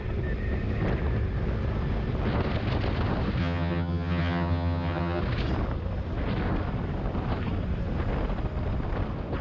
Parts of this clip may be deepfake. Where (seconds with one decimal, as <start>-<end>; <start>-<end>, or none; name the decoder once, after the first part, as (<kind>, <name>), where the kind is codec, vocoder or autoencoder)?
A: 3.4-5.2 (vocoder, HiFi-GAN)